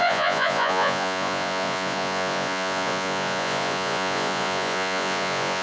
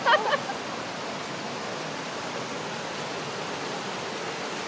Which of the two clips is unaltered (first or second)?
second